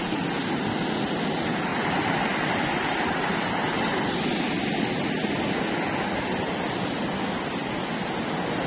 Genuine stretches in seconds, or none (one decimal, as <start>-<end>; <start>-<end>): 0.0-1.7; 4.1-8.7